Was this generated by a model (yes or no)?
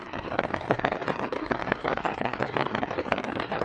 yes